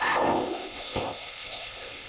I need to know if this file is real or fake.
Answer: fake